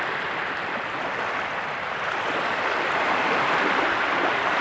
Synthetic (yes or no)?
yes